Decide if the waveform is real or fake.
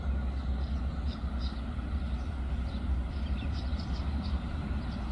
real